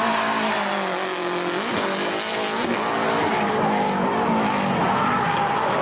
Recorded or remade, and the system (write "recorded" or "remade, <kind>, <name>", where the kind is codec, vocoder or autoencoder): recorded